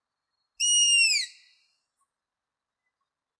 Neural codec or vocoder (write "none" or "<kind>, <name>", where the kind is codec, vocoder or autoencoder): none